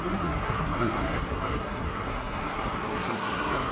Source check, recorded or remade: remade